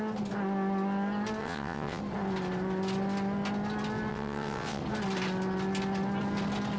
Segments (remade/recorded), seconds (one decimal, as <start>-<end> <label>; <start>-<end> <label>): 0.0-1.4 recorded; 1.4-2.0 remade; 2.0-4.1 recorded; 4.1-4.8 remade; 4.8-6.8 recorded